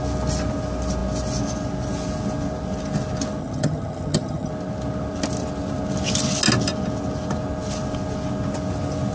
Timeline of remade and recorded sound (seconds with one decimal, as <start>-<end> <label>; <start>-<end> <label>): 0.0-3.4 recorded; 3.4-4.5 remade; 4.5-9.1 recorded